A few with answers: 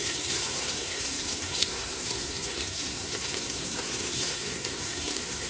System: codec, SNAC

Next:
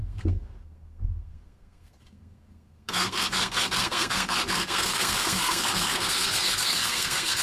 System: codec, SNAC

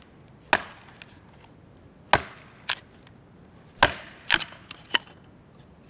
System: none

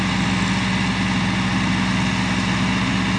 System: none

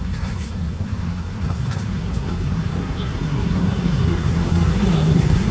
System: codec, SNAC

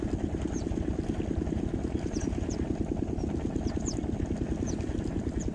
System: none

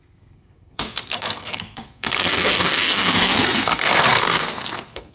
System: codec, SNAC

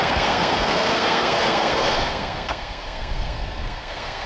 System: codec, SNAC